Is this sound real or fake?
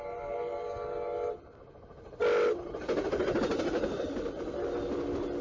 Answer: real